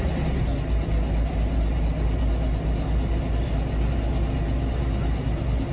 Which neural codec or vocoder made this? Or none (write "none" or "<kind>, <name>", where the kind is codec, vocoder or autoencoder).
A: none